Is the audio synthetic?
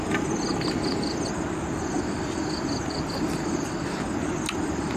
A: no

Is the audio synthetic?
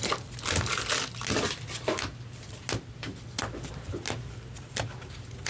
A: no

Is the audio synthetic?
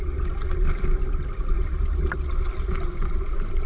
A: no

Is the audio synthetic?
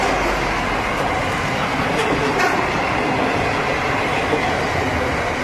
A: no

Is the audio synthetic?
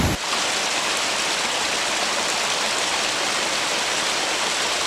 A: no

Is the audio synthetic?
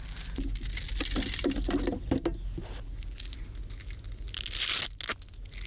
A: no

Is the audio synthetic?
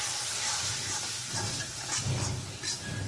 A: no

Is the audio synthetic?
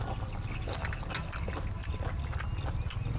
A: no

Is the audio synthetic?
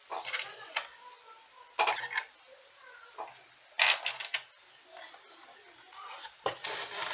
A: no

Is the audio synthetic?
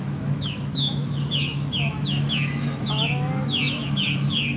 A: yes